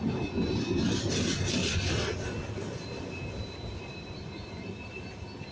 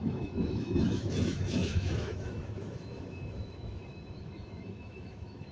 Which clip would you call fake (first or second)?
second